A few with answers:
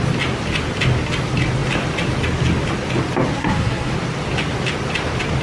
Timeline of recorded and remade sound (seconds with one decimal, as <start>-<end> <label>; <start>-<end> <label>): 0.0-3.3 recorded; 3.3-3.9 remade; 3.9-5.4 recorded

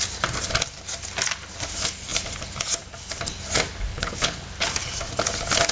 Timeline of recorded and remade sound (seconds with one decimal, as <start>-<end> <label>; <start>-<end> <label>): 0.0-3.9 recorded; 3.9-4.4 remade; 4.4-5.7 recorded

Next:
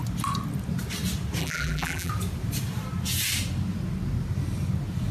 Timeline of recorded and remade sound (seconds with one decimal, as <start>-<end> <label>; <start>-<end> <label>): 0.0-1.4 recorded; 1.4-2.1 remade; 2.1-5.1 recorded

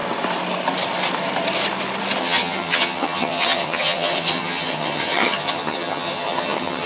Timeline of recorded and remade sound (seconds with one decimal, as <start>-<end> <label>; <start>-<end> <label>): 0.0-2.2 recorded; 2.2-6.9 remade